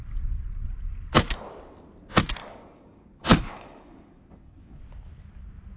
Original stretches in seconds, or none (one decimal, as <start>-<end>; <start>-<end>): 0.0-2.4; 4.8-5.8